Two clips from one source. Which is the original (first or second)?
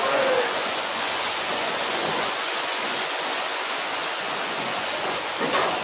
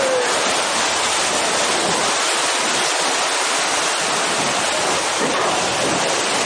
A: second